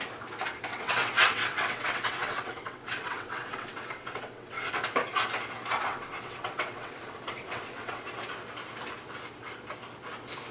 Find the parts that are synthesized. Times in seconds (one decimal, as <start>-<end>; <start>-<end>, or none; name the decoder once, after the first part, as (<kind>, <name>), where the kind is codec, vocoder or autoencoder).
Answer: 0.7-4.7 (vocoder, WaveNeXt); 5.9-8.0